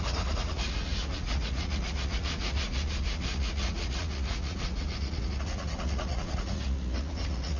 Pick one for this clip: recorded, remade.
remade